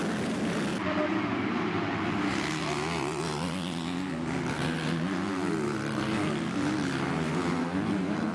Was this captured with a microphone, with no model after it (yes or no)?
yes